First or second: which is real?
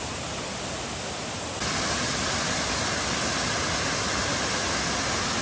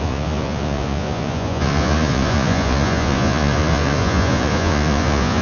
first